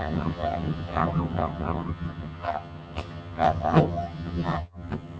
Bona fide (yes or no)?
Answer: no